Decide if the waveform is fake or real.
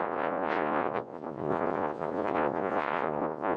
fake